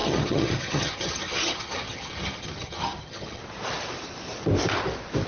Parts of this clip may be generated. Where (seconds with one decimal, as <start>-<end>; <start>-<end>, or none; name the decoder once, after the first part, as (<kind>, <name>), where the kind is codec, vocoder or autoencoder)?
0.0-3.4 (vocoder, HiFi-GAN)

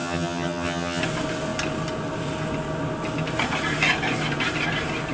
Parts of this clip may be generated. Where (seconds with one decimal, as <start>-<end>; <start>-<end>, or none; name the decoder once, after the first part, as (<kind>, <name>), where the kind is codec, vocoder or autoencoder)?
0.0-1.0 (vocoder, HiFi-GAN)

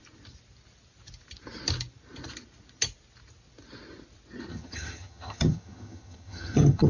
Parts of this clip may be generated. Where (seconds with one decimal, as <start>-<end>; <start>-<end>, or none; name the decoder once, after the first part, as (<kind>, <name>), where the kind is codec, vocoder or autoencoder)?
4.5-6.9 (vocoder, HiFi-GAN)

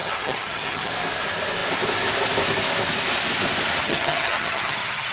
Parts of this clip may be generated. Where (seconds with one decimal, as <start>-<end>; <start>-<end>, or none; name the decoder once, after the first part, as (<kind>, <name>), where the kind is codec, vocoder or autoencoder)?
0.0-0.9 (vocoder, HiFi-GAN); 3.8-5.1

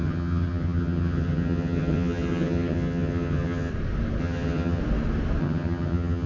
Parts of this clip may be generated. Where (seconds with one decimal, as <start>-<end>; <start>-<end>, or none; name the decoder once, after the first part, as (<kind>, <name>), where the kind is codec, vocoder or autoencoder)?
0.0-3.7 (vocoder, HiFi-GAN); 4.2-4.8; 5.4-6.3

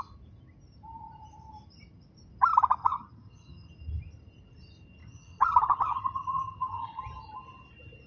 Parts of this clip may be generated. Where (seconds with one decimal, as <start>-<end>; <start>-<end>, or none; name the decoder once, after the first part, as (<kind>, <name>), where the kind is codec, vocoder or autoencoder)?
2.8-3.7 (vocoder, HiFi-GAN); 5.0-7.0